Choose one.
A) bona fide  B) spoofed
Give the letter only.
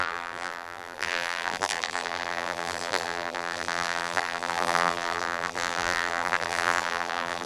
B